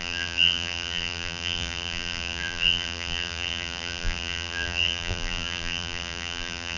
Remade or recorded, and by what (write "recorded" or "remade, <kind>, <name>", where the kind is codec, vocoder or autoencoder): remade, vocoder, BigVGAN v2